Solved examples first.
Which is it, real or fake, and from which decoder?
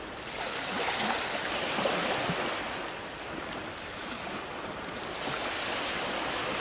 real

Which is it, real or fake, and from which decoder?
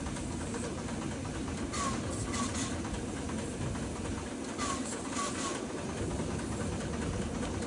real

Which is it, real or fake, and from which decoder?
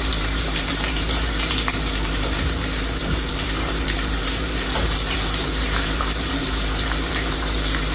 fake, vocoder, BigVGAN v2